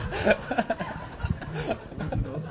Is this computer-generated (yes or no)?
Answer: no